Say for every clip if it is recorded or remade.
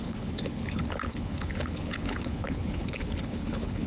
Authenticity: remade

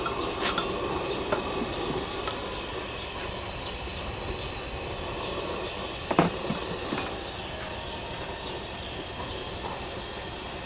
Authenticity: recorded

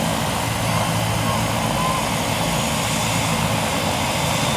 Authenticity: recorded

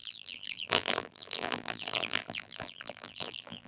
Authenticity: remade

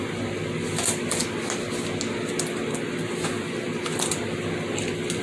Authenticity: recorded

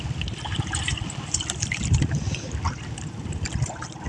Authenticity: remade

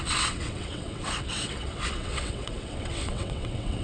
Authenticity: remade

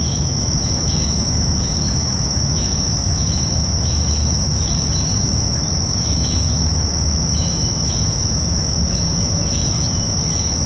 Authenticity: remade